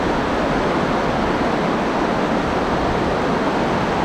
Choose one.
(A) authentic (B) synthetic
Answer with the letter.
A